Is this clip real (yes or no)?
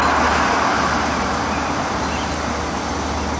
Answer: yes